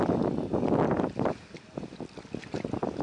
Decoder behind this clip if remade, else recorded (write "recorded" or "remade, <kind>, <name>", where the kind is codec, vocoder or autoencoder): recorded